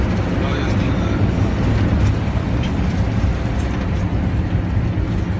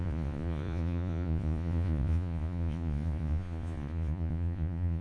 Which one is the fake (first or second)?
second